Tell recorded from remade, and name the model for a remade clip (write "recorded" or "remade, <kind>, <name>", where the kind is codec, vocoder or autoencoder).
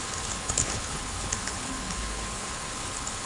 remade, codec, HILCodec